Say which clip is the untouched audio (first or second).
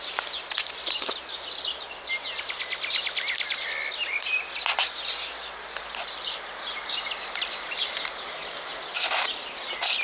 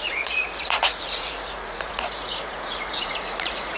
first